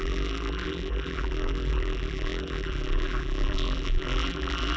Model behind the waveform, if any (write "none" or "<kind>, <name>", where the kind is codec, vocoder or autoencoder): vocoder, BigVGAN v2